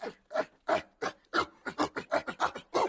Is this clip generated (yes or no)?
no